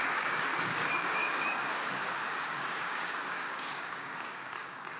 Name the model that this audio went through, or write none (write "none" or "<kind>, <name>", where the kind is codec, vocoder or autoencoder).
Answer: codec, DAC